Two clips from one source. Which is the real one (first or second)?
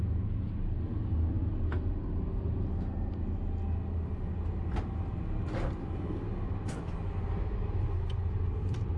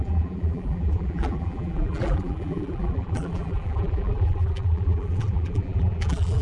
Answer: first